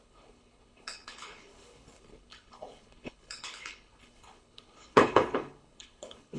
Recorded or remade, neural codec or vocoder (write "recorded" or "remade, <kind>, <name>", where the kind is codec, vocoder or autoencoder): remade, codec, HILCodec